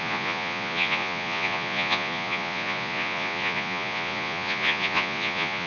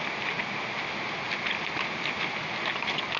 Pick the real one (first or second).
second